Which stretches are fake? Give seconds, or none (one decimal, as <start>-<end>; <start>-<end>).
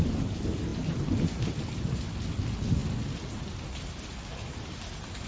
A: none